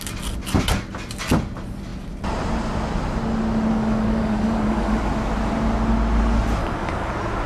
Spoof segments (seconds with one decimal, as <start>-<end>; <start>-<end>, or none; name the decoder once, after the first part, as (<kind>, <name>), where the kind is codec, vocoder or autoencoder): 3.7-5.0 (codec, DAC); 6.6-7.1